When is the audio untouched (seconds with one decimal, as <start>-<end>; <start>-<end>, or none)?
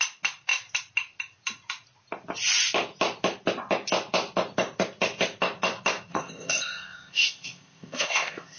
0.0-6.1